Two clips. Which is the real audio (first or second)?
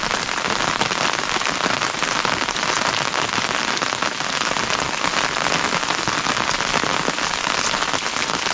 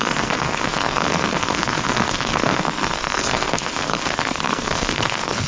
first